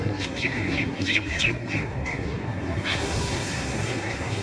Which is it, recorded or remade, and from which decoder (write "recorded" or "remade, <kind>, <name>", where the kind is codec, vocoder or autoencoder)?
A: remade, codec, SNAC